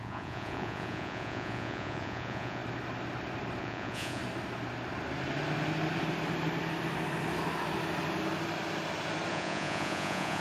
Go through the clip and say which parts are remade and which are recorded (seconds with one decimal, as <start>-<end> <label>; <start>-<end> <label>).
0.0-2.6 remade; 2.6-3.6 recorded; 3.6-4.2 remade; 4.2-9.3 recorded; 9.3-10.4 remade